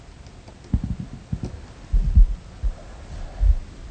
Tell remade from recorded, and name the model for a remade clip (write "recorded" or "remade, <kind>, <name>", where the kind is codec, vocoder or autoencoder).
recorded